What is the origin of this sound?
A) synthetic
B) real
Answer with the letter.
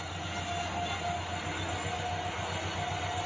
B